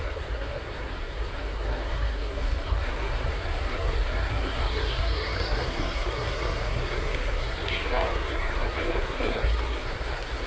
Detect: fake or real fake